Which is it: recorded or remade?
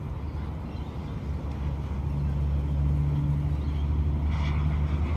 recorded